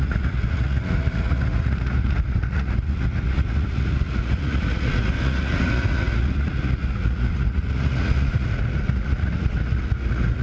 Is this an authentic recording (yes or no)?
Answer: no